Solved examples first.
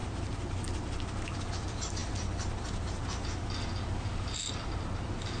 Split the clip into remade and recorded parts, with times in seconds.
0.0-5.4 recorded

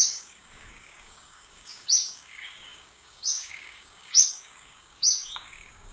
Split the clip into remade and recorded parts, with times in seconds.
0.0-5.9 remade

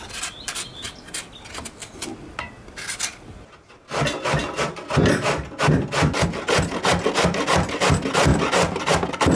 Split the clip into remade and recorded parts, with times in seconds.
0.0-9.4 recorded

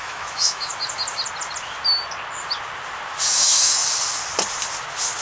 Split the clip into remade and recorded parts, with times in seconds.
0.0-0.7 remade; 0.7-3.3 recorded; 3.3-3.8 remade; 3.8-5.2 recorded

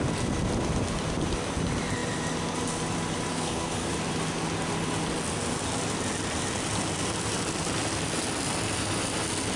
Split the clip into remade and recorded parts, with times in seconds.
0.0-3.3 recorded; 3.3-3.9 remade; 3.9-9.6 recorded